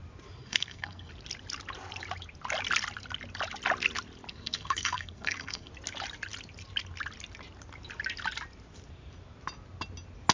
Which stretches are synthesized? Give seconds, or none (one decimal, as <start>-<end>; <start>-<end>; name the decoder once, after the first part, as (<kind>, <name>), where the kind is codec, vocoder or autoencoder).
0.4-1.1 (codec, SNAC); 4.3-5.7